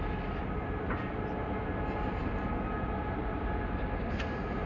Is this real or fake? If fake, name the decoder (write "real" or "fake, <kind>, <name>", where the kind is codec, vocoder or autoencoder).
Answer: real